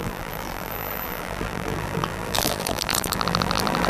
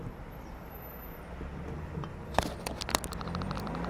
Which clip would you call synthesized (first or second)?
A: first